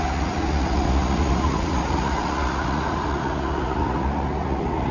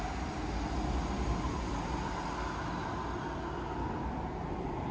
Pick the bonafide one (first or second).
second